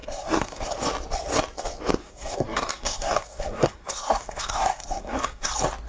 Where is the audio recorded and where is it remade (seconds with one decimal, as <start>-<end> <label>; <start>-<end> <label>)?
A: 0.0-0.7 remade; 0.7-2.0 recorded; 2.0-5.5 remade; 5.5-5.9 recorded